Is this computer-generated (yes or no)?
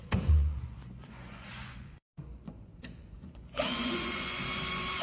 yes